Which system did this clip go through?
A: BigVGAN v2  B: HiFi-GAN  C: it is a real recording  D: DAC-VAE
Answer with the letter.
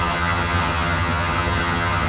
B